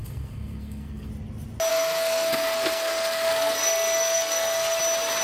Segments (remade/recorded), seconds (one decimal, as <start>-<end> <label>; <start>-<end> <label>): 0.0-1.1 remade; 1.1-1.7 recorded; 1.7-4.8 remade; 4.8-5.2 recorded